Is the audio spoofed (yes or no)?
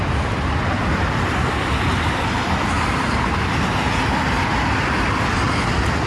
no